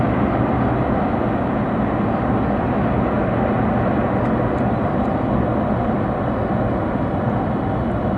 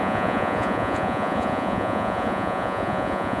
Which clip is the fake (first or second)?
second